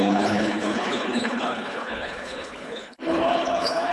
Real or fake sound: fake